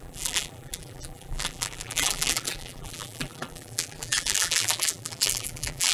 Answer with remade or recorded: remade